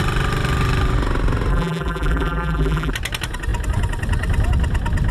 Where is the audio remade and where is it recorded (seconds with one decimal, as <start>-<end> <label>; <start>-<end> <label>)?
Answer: 0.0-1.5 recorded; 1.5-2.9 remade; 2.9-5.1 recorded

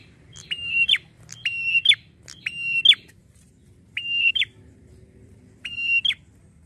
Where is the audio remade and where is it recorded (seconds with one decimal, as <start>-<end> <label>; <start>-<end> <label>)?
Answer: 0.0-0.9 remade; 0.9-3.2 recorded; 3.2-5.4 remade; 5.4-6.7 recorded